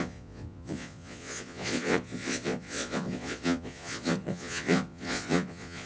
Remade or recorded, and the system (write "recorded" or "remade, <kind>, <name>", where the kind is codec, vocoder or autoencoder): remade, vocoder, Vocos